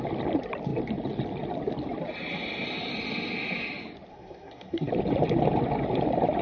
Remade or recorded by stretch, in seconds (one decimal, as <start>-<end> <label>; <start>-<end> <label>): 0.0-4.1 recorded; 4.1-4.9 remade; 4.9-6.4 recorded